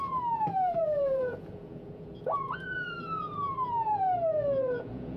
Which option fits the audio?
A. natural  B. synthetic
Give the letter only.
B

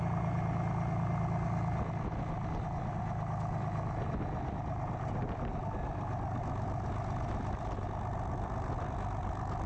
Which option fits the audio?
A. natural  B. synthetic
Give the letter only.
A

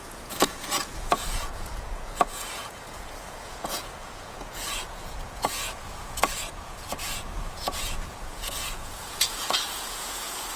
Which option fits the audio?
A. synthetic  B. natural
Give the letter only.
A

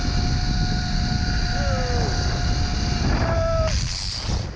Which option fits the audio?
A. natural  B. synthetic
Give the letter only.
A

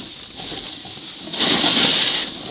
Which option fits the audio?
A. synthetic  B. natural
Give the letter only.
B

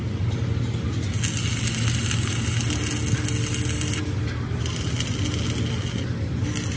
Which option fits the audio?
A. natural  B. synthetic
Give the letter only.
A